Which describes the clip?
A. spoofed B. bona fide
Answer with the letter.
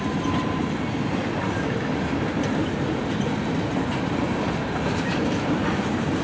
B